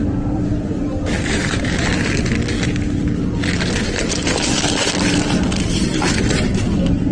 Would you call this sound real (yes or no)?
yes